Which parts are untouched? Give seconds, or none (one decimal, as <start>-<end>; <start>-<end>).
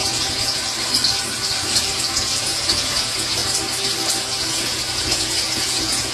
0.6-2.1; 3.4-4.5